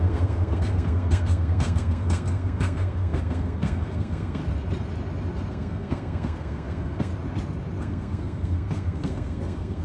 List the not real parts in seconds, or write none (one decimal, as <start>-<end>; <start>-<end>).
0.0-4.4; 5.5-7.1; 7.8-9.8